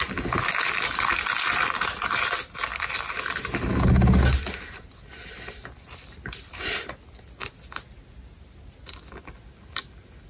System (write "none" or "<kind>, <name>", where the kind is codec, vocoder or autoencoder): none